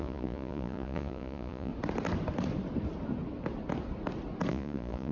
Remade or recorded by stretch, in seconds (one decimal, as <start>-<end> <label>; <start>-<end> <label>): 0.0-1.7 remade; 1.7-4.5 recorded; 4.5-5.1 remade